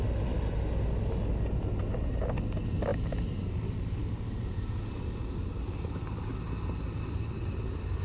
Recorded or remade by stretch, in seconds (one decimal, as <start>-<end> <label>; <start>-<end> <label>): 0.0-8.0 recorded